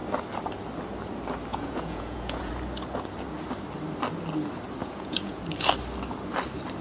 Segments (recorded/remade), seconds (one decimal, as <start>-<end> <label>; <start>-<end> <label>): 0.0-1.5 recorded; 1.5-2.5 remade; 2.5-4.8 recorded; 4.8-5.4 remade; 5.4-6.8 recorded